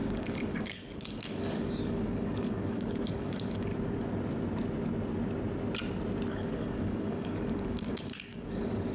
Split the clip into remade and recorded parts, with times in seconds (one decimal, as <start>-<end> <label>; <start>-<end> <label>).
0.0-3.7 remade; 3.7-6.3 recorded; 6.3-8.9 remade